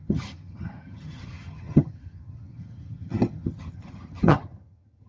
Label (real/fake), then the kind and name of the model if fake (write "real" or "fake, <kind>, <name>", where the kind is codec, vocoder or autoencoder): fake, vocoder, HiFi-GAN